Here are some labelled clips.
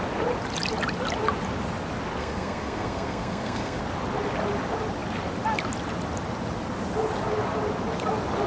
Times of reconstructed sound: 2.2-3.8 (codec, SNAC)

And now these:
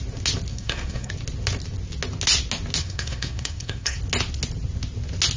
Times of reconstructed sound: 0.5-1.1 (codec, SNAC); 2.8-4.0

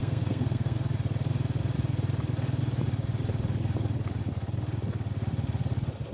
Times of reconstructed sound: 0.0-0.8 (codec, SNAC)

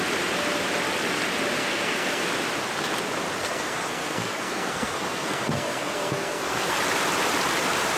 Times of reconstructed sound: 1.6-2.3 (codec, SNAC); 3.4-6.8

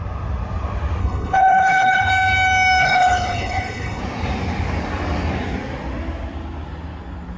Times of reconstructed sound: 1.0-2.1 (codec, HILCodec); 2.8-4.0